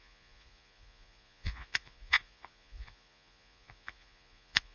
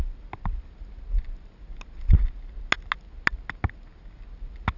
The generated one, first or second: first